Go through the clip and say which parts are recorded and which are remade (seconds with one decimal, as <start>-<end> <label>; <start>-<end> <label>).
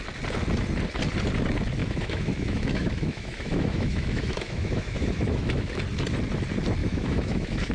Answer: 0.0-1.8 recorded; 1.8-5.8 remade; 5.8-6.8 recorded; 6.8-7.7 remade